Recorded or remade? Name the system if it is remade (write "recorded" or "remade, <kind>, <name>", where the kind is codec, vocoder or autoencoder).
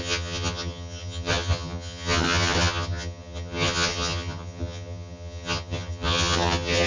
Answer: remade, vocoder, HiFi-GAN